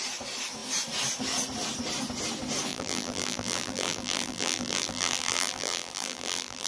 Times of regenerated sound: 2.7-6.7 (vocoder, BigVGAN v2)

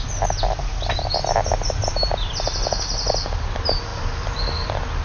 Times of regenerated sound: none

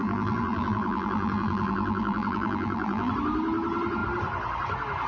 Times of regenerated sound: 0.0-3.1 (vocoder, BigVGAN v2)

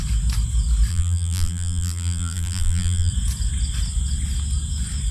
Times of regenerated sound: 0.9-3.1 (vocoder, BigVGAN v2)

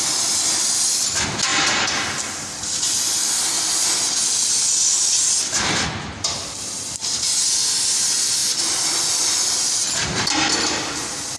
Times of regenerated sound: none